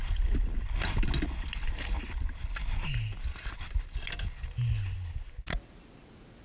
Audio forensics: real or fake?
real